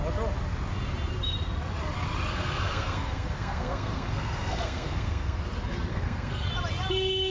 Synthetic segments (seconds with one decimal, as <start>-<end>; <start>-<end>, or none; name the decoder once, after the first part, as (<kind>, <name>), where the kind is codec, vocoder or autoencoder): 2.3-5.4 (codec, SNAC); 5.9-6.5